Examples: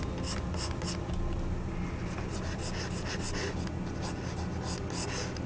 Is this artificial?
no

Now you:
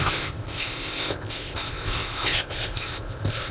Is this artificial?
yes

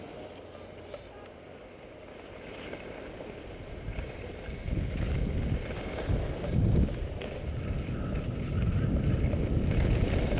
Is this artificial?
no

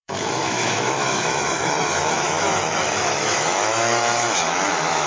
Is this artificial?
yes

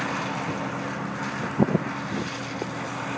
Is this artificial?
no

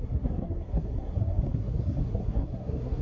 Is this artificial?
yes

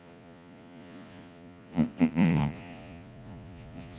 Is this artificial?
yes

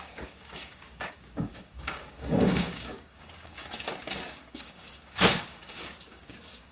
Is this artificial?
yes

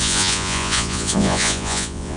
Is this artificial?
yes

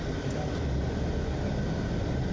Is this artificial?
no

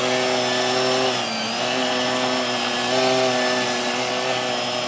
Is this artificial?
no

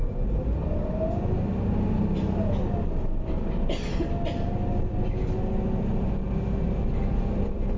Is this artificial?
no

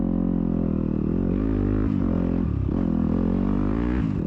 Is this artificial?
no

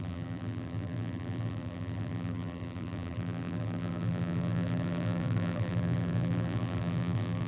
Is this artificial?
yes